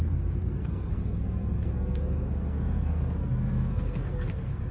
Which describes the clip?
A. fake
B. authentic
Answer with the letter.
A